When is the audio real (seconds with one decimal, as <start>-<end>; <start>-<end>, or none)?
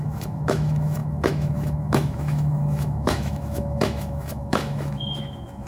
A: none